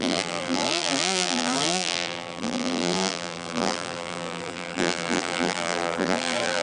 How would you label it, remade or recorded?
remade